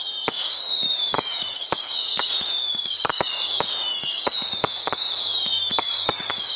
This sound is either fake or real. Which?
fake